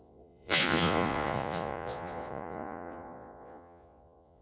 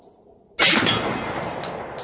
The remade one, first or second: first